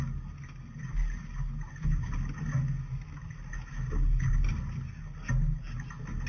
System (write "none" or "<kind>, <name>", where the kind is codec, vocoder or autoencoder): none